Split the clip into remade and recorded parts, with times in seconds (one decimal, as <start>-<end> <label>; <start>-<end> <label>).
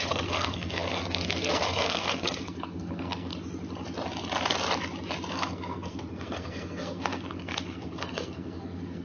0.0-3.3 remade; 3.3-5.3 recorded; 5.3-9.0 remade